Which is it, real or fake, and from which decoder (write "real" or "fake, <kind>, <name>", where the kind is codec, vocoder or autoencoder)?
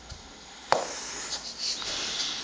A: real